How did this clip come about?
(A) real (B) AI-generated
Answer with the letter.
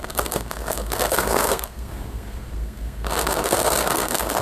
B